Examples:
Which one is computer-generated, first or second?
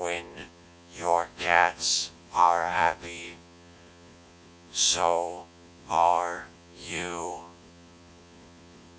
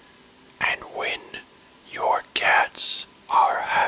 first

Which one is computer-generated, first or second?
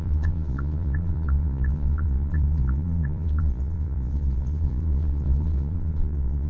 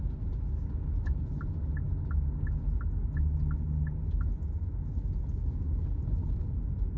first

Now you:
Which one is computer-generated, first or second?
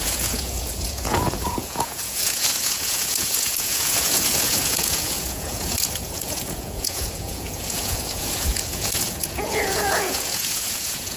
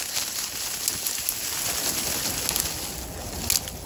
first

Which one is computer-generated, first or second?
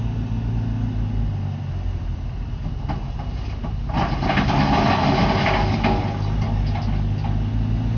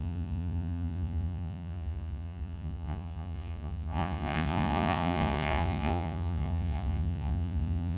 second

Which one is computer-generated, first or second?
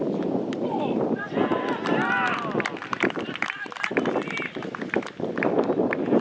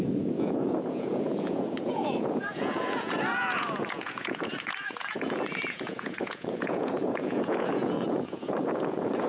second